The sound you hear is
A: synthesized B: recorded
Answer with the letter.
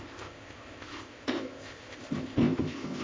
A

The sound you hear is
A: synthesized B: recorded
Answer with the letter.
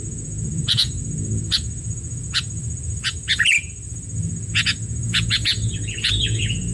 A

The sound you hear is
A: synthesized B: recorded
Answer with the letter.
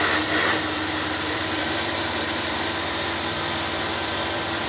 A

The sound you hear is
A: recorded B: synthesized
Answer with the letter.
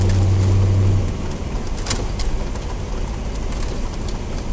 A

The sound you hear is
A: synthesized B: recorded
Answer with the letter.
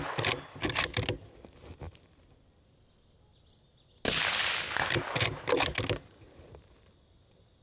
B